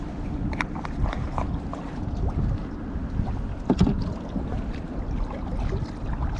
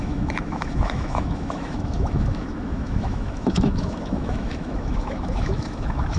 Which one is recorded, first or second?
first